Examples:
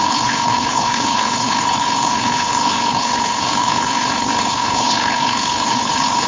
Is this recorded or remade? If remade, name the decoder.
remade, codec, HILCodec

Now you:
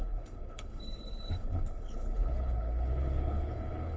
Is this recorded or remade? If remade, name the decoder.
remade, codec, HILCodec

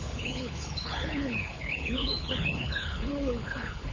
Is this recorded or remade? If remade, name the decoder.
remade, codec, HILCodec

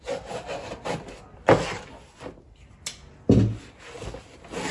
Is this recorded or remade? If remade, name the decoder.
recorded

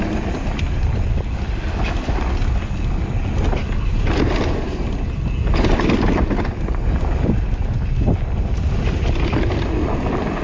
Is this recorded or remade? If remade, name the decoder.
recorded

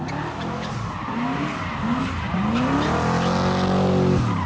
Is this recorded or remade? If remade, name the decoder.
recorded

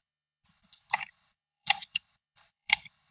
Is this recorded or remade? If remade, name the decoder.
remade, codec, HILCodec